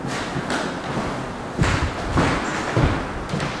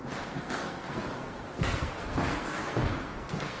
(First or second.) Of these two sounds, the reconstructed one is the second